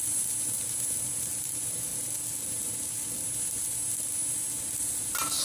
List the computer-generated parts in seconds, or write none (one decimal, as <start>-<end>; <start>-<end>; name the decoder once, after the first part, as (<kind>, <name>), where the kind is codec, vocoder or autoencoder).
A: none

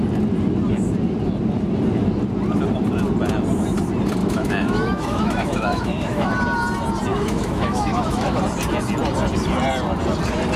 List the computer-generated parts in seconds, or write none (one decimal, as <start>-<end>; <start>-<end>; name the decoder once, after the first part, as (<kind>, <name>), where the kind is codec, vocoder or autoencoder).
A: 4.2-6.3 (autoencoder, DAC-VAE); 7.1-8.4